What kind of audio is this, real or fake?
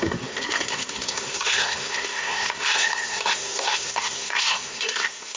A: fake